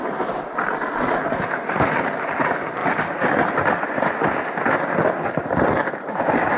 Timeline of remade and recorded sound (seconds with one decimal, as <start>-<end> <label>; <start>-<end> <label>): 0.0-6.6 recorded